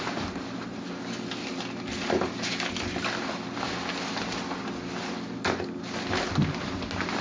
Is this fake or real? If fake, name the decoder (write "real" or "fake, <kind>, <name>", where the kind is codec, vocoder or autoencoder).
real